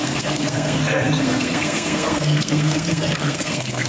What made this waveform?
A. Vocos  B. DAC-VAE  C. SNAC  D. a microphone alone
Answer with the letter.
C